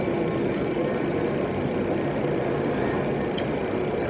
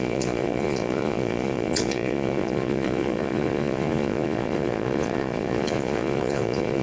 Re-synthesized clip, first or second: second